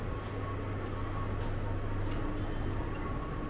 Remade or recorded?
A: recorded